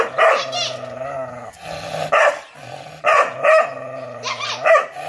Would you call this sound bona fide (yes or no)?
yes